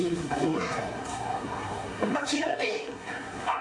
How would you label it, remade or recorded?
remade